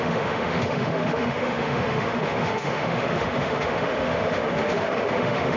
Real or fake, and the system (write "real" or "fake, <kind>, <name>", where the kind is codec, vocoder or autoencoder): fake, autoencoder, DAC-VAE